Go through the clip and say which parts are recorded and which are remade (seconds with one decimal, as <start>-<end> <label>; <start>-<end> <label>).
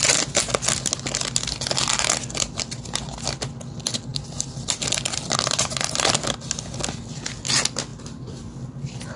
0.0-4.1 recorded; 4.1-5.3 remade; 5.3-9.2 recorded